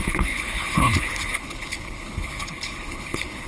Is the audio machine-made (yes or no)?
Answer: yes